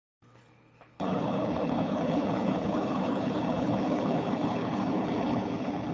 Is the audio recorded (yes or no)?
no